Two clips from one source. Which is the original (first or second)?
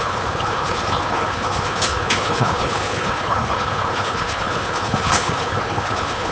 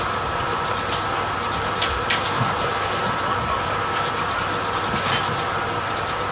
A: second